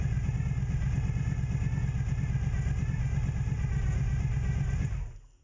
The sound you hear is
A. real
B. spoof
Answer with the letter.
A